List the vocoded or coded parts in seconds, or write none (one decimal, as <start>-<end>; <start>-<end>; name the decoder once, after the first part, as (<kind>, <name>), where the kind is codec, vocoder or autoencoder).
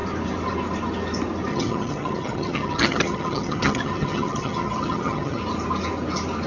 1.5-5.4 (vocoder, HiFi-GAN)